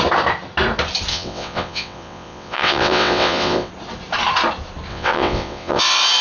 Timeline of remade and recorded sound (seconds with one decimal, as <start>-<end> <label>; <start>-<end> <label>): 0.0-1.1 recorded; 1.1-3.7 remade; 3.7-4.9 recorded; 4.9-5.8 remade; 5.8-6.2 recorded